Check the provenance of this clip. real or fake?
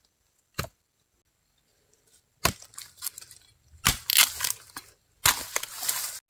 real